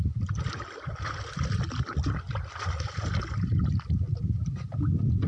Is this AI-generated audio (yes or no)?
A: no